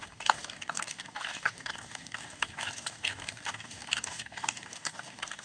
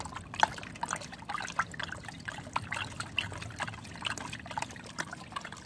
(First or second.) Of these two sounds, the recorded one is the second